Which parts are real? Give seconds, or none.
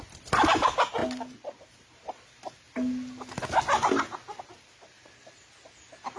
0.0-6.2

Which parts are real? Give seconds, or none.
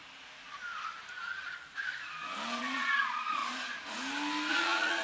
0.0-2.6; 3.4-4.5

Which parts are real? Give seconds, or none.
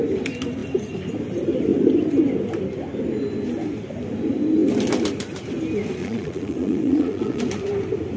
0.0-6.0; 7.4-8.2